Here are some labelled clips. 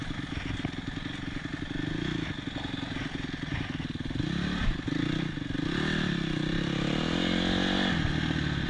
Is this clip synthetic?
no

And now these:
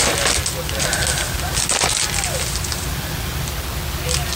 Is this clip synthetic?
no